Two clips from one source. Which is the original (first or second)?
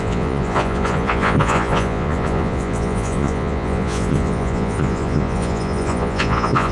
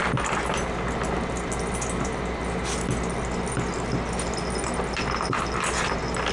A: second